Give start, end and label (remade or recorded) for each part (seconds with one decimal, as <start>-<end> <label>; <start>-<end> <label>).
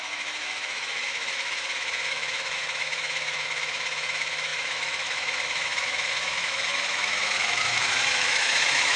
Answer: 0.0-9.0 remade